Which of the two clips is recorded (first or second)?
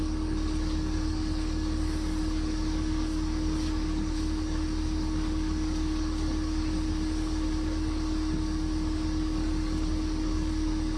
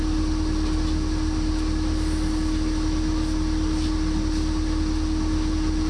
second